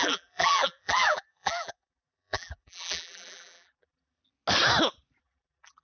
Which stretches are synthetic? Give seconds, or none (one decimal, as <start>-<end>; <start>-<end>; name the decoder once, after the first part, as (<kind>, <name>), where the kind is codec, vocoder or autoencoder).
0.0-4.2 (vocoder, BigVGAN v2); 5.2-5.8